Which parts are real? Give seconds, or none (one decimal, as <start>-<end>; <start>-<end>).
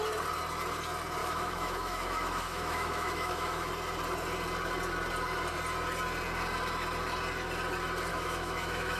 0.0-1.2; 3.7-8.1